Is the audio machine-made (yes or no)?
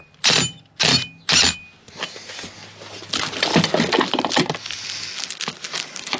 no